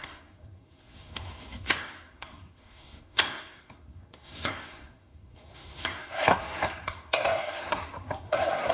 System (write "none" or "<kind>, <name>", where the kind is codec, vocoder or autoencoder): codec, SNAC